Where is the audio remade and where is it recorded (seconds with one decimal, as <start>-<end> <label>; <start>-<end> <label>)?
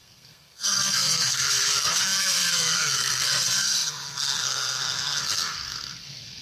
0.0-6.4 remade